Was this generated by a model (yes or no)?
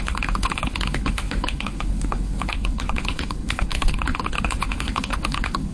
yes